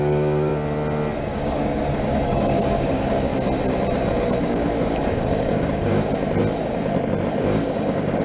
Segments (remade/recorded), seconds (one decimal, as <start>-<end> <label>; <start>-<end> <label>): 0.0-0.5 remade; 0.5-1.2 recorded; 1.2-3.3 remade; 3.3-4.4 recorded; 4.4-6.1 remade; 6.1-7.4 recorded; 7.4-8.2 remade